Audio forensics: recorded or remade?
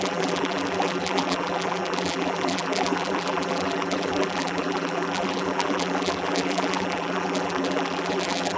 remade